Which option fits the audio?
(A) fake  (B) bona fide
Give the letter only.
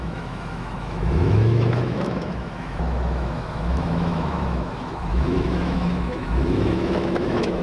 A